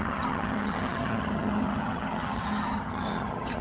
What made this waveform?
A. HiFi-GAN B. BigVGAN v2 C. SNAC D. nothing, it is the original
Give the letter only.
A